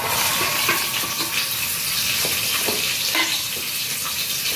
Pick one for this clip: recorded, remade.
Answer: recorded